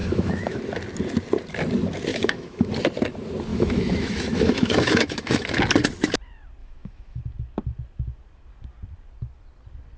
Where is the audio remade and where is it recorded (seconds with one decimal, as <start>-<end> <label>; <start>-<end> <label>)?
0.0-0.6 remade; 0.6-2.1 recorded; 2.1-2.7 remade; 2.7-3.5 recorded; 3.5-5.6 remade; 5.6-6.6 recorded; 6.6-7.2 remade; 7.2-10.0 recorded